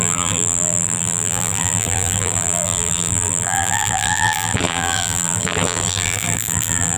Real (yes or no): no